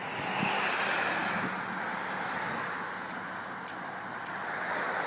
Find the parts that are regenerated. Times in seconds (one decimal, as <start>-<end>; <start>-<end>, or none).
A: none